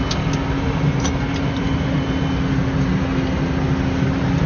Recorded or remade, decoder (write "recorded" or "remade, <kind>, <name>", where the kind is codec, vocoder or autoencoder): recorded